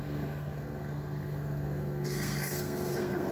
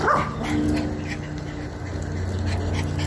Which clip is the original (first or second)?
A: second